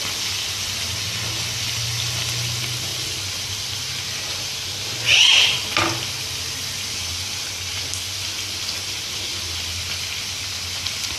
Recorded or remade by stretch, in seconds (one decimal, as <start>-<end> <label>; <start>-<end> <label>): 0.0-11.2 recorded